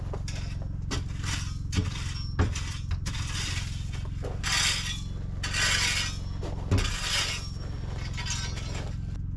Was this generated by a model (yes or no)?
no